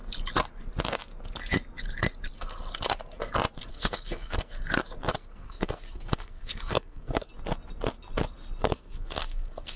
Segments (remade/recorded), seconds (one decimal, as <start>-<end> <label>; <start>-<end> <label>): 0.0-3.7 recorded; 3.7-4.6 remade; 4.6-5.1 recorded; 5.1-7.3 remade; 7.3-8.6 recorded; 8.6-9.8 remade